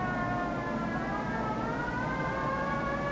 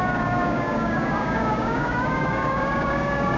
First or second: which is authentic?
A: first